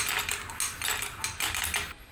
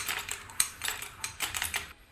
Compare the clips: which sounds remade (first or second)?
second